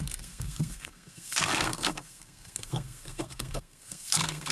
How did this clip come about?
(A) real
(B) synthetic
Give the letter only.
B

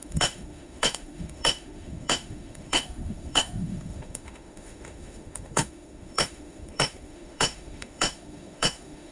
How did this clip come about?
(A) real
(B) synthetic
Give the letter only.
B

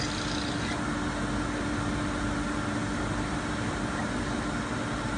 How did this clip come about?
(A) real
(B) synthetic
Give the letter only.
A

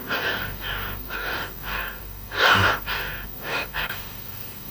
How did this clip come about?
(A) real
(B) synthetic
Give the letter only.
B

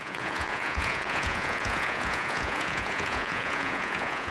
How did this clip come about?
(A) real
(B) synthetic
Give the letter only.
B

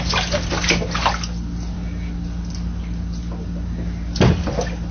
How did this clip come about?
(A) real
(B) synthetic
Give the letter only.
A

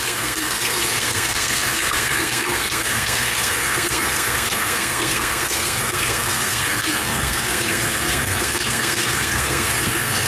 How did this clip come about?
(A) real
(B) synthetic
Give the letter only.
B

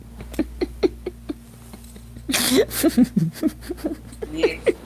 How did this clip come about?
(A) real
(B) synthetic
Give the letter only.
A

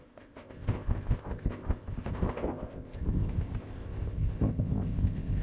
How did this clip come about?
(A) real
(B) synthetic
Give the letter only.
B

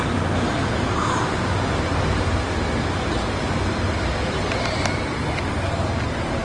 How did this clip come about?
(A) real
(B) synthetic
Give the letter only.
A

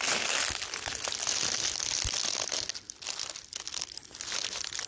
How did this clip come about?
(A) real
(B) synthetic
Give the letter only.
A